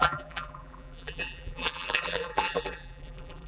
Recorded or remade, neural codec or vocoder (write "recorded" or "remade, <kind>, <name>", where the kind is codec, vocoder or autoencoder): remade, vocoder, BigVGAN v2